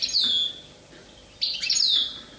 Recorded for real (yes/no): yes